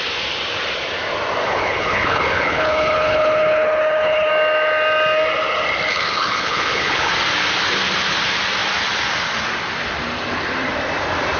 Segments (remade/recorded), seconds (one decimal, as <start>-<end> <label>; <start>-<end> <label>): 0.0-1.4 recorded; 1.4-4.3 remade; 4.3-5.9 recorded; 5.9-7.1 remade; 7.1-11.4 recorded